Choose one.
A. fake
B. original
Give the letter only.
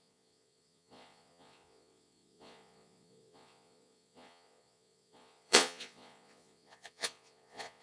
A